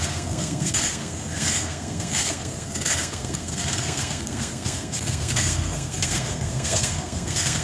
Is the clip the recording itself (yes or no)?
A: no